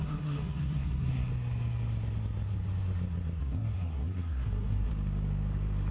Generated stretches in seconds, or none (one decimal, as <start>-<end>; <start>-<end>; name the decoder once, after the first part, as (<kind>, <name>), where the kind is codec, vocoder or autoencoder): 0.0-1.3 (codec, SNAC); 3.4-4.9